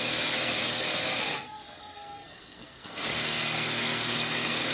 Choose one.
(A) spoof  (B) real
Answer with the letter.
A